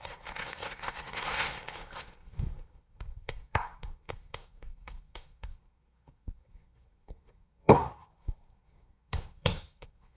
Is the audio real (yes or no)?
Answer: no